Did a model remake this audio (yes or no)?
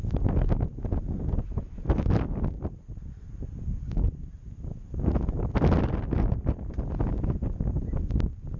no